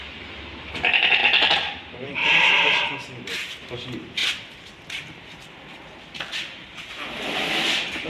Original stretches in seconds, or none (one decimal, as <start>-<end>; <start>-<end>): 0.0-1.2; 3.8-8.1